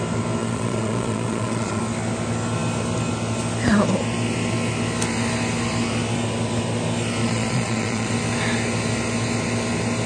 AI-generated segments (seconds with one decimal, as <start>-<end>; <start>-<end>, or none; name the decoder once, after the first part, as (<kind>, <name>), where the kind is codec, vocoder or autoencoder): 0.4-1.8 (vocoder, Vocos); 7.2-8.1